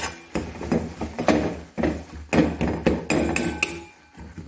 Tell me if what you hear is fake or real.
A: real